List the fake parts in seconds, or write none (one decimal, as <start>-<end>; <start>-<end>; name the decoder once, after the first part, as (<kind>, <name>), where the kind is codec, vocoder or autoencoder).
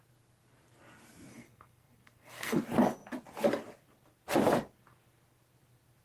1.3-2.6 (codec, SNAC)